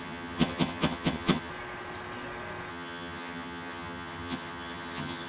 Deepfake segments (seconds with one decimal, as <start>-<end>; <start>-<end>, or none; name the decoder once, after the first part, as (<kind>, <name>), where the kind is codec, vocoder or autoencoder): 0.0-1.5 (vocoder, HiFi-GAN); 2.7-5.3